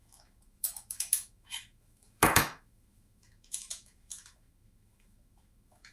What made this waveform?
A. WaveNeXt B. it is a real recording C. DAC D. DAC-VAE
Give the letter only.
D